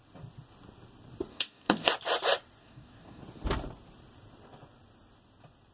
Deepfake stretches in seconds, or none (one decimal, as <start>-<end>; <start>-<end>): 1.3-1.9; 2.6-3.2